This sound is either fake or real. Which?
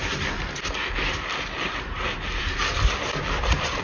fake